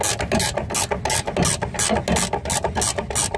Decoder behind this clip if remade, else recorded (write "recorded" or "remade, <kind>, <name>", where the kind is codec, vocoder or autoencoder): recorded